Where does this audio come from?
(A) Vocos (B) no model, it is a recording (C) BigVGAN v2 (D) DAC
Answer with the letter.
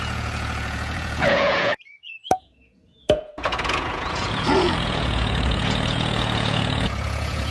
A